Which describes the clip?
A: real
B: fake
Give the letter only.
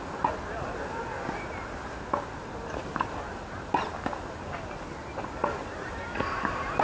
A